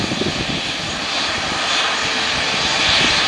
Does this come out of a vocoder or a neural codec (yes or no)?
no